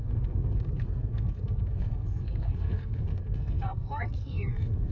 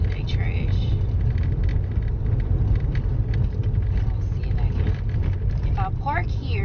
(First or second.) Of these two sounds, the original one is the second